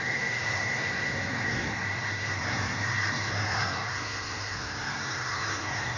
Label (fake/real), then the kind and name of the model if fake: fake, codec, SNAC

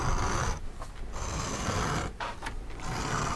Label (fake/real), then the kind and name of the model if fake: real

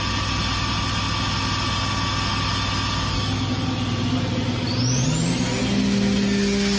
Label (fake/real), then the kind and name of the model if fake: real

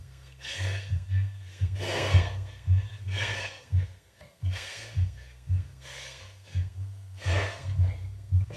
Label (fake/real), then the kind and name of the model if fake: fake, codec, SNAC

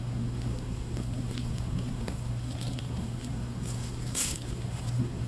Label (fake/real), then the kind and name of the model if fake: fake, codec, SNAC